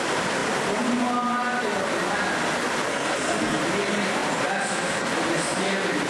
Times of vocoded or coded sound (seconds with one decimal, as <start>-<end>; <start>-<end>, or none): 2.9-3.6